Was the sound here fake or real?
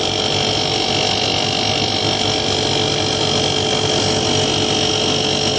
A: real